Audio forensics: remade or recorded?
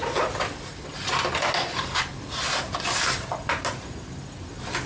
recorded